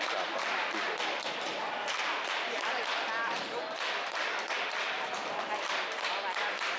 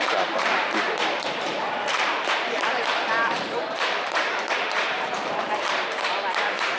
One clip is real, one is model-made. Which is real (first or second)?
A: first